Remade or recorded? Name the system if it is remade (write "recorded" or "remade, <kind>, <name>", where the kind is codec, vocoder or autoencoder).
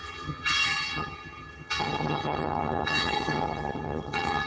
remade, vocoder, HiFi-GAN